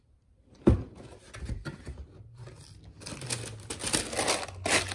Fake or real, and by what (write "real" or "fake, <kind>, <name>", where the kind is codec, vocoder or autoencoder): real